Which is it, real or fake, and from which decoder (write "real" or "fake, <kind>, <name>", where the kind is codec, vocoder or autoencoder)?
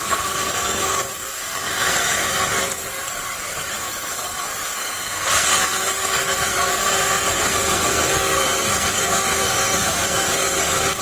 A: fake, codec, SNAC